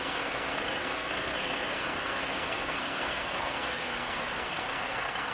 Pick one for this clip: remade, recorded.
remade